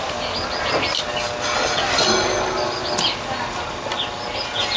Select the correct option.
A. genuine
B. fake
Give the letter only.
A